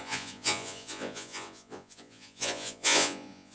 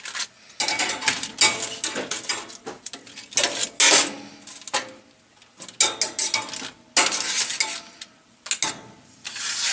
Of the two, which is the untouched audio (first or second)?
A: second